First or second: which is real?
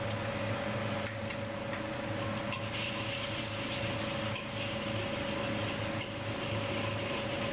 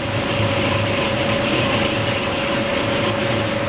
first